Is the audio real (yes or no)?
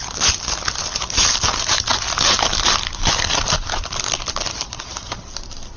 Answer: yes